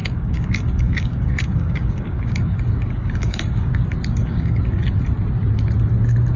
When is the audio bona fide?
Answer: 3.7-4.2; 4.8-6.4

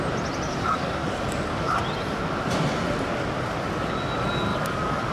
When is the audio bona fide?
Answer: 0.0-0.5; 1.8-4.5

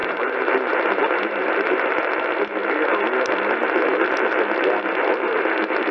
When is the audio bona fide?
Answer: 2.1-5.9